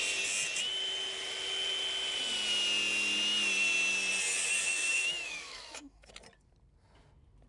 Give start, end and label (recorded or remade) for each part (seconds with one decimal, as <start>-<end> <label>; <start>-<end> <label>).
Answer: 0.0-4.7 recorded; 4.7-6.1 remade; 6.1-7.5 recorded